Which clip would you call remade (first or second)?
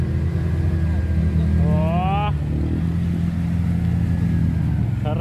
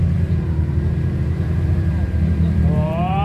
second